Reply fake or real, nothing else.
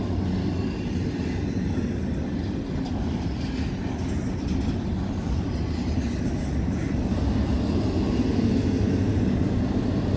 real